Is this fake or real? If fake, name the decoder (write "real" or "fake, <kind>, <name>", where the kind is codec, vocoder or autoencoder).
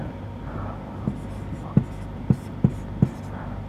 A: real